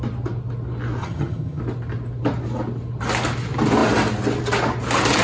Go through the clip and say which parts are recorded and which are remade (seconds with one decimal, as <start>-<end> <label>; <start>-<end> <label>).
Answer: 0.0-1.0 recorded; 1.0-1.6 remade; 1.6-5.2 recorded